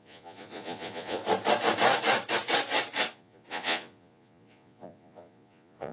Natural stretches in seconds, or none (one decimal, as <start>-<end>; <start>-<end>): 1.2-3.1